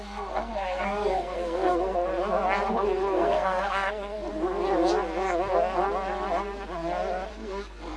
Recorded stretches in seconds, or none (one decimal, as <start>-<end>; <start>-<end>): 2.1-2.7; 4.3-7.3